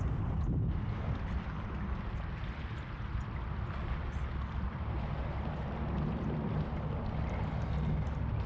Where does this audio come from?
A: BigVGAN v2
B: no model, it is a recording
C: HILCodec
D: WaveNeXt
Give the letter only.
B